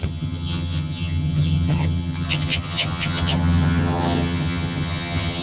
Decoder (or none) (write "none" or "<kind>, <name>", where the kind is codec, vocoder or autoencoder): vocoder, HiFi-GAN